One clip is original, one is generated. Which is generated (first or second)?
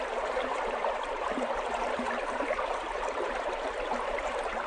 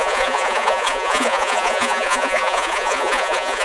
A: second